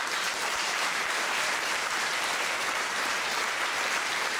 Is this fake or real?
fake